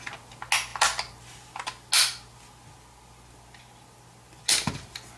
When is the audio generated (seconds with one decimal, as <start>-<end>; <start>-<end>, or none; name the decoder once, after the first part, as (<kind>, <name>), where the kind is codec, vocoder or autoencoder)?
none